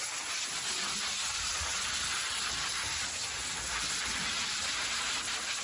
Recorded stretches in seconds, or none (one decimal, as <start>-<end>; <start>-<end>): 0.0-5.6